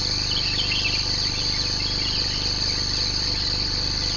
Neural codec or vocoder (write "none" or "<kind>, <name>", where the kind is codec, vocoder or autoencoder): none